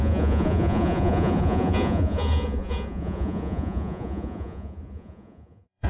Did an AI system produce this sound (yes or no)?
yes